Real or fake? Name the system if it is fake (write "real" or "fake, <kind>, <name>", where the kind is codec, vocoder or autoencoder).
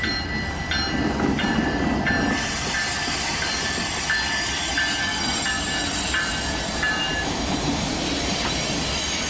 real